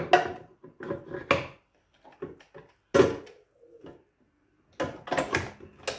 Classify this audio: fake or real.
real